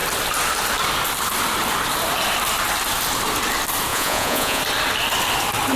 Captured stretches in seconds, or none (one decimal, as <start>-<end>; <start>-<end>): 0.0-3.9; 4.6-5.8